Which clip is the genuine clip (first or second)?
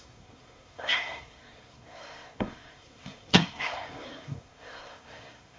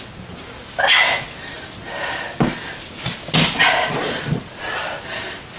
second